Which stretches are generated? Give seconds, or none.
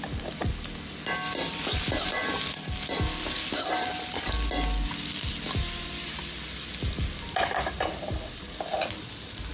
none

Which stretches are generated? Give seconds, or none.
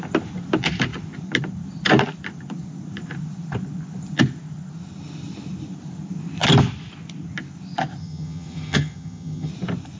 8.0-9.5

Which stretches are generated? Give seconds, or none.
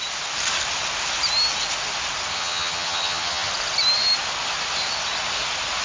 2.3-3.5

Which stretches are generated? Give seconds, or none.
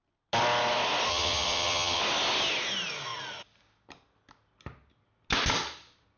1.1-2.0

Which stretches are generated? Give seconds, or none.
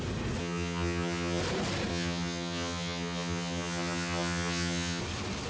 0.4-1.4; 1.9-5.0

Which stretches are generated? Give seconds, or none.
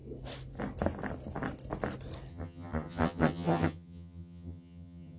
2.3-5.2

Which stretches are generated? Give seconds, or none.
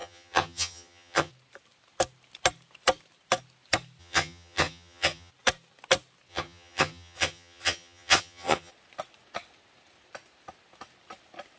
0.0-1.3; 4.0-5.3; 6.3-8.7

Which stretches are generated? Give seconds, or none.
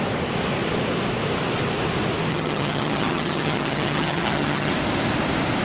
2.3-4.7